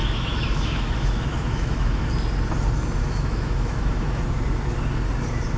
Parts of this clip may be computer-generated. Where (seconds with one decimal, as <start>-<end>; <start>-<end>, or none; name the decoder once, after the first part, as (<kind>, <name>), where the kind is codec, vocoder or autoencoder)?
0.0-2.1 (autoencoder, DAC-VAE); 3.0-4.2